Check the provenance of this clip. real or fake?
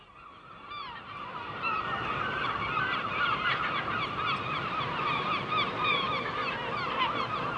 fake